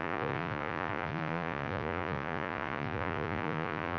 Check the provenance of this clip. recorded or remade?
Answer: remade